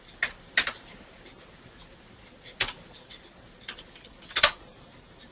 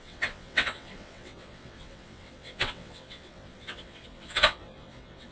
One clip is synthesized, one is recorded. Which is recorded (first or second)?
first